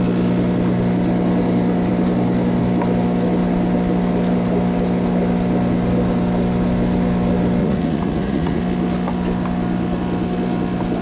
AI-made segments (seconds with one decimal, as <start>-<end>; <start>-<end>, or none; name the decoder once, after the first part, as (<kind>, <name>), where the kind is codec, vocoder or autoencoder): 7.6-8.6 (vocoder, Vocos)